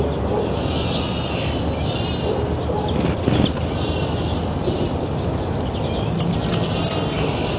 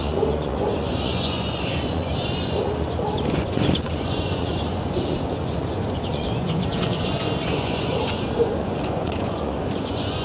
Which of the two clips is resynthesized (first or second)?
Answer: second